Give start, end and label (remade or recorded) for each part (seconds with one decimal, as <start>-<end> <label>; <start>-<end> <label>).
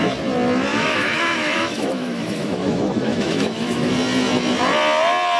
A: 0.0-0.7 recorded; 0.7-3.9 remade; 3.9-5.4 recorded